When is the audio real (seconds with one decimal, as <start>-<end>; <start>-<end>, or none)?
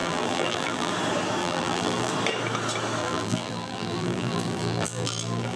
0.9-1.4; 2.1-3.0